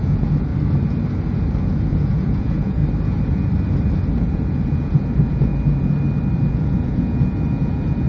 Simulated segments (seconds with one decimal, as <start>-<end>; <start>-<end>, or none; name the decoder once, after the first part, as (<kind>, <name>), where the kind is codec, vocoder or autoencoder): 0.0-0.5 (vocoder, Vocos); 1.6-2.8; 4.1-5.5; 6.5-8.1